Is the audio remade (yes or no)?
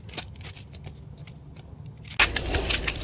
no